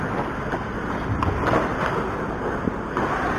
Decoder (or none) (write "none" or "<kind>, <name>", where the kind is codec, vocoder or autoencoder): none